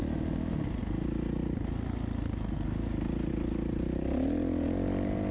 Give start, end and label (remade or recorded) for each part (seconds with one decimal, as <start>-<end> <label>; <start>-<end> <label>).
0.0-5.3 recorded